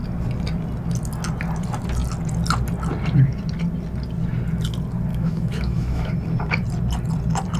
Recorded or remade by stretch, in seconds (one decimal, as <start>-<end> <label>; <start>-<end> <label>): 0.0-5.1 recorded; 5.1-6.1 remade; 6.1-7.6 recorded